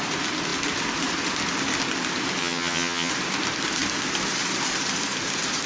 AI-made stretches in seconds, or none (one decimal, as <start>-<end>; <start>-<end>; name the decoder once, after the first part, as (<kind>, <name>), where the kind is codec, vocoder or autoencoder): 2.4-3.1 (vocoder, HiFi-GAN)